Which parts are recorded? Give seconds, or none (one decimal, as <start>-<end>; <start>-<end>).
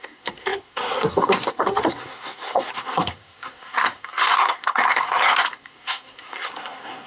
none